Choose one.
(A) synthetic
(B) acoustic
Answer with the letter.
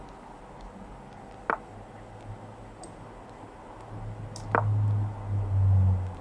B